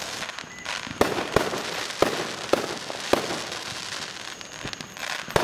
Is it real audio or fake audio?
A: fake